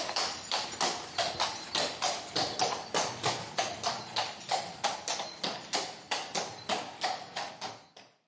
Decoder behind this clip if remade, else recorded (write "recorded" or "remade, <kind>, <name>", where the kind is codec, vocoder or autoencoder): remade, vocoder, BigVGAN v2